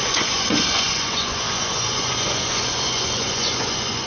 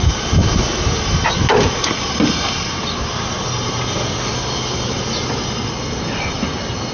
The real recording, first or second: second